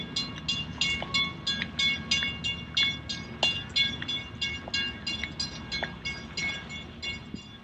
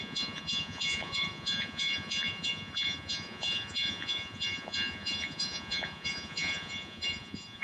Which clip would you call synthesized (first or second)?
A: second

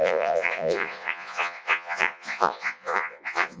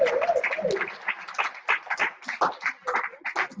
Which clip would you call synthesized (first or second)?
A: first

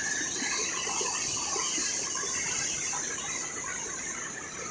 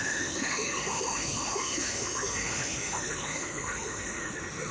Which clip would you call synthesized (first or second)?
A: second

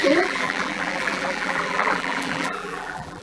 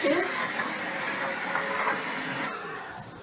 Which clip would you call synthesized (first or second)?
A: first